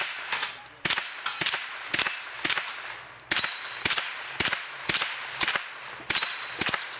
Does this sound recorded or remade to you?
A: recorded